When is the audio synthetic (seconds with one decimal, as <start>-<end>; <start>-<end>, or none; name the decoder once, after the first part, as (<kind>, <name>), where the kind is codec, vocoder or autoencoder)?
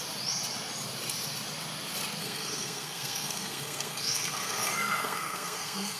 2.2-6.0 (codec, SNAC)